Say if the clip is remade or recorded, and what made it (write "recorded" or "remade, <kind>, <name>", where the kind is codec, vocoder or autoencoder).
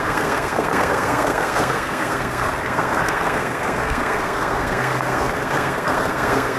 remade, codec, SNAC